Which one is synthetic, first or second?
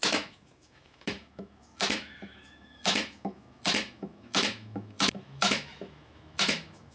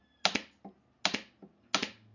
first